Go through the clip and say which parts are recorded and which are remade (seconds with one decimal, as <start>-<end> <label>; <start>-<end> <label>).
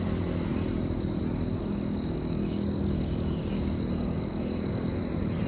0.0-1.6 recorded; 1.6-4.9 remade; 4.9-5.5 recorded